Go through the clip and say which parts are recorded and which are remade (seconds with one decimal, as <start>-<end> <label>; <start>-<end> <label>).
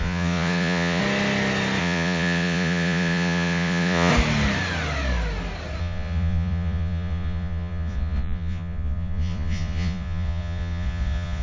0.0-1.0 remade; 1.0-1.8 recorded; 1.8-4.1 remade; 4.1-5.8 recorded; 5.8-11.4 remade